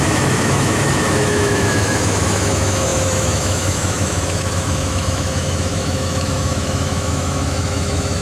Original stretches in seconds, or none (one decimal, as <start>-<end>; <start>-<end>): none